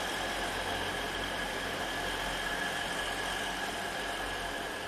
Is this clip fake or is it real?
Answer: real